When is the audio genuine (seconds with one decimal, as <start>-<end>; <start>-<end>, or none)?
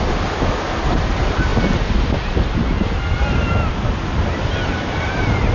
0.0-5.5